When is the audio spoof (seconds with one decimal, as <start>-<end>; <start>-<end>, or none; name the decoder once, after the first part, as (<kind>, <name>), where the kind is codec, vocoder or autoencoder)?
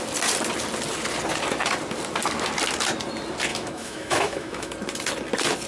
3.5-4.7 (autoencoder, DAC-VAE)